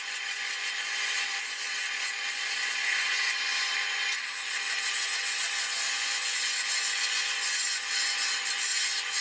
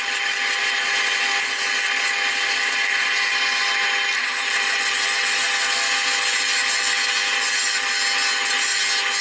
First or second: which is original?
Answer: second